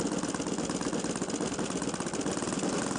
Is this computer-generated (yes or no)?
no